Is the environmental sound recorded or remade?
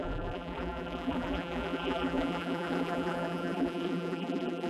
remade